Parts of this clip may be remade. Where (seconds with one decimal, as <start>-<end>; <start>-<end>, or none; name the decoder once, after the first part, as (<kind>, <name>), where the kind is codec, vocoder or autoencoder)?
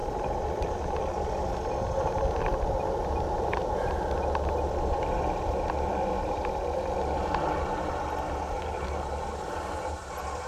none